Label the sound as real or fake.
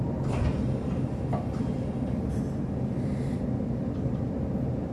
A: real